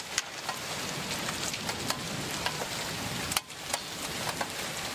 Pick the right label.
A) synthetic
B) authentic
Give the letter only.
B